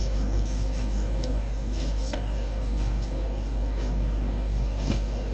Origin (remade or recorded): remade